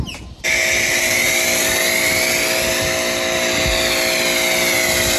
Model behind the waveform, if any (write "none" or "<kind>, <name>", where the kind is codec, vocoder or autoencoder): none